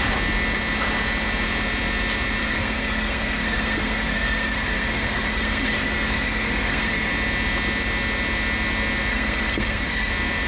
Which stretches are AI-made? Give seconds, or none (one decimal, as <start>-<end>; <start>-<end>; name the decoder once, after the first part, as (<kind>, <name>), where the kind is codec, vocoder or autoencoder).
2.4-7.1 (codec, SNAC); 9.1-10.1